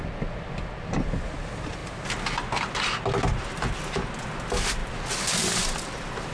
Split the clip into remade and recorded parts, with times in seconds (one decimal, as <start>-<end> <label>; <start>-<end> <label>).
0.0-6.3 recorded